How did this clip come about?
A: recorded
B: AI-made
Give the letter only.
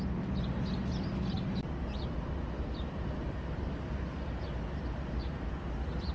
A